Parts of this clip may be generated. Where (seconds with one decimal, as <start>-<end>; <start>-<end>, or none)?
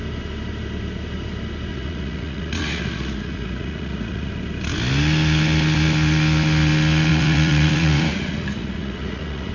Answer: 1.7-4.3; 7.1-9.5